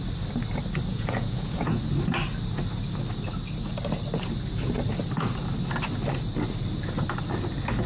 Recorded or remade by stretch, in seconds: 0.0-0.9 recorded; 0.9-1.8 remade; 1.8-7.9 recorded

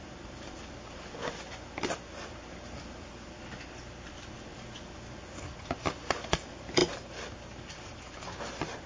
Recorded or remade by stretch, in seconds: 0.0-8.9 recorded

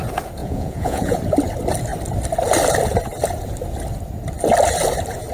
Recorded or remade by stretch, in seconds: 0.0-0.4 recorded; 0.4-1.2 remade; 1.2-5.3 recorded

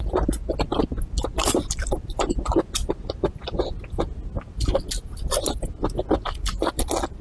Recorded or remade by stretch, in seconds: 0.0-7.2 recorded

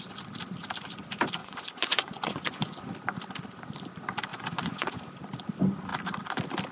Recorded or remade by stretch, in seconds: 0.0-1.4 recorded; 1.4-2.9 remade; 2.9-4.3 recorded; 4.3-5.0 remade; 5.0-6.7 recorded